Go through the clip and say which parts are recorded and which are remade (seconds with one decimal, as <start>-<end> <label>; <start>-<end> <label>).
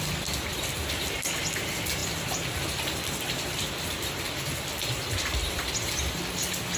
0.0-2.0 recorded; 2.0-5.7 remade; 5.7-6.8 recorded